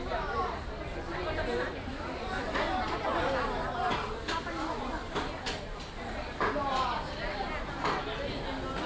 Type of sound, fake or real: real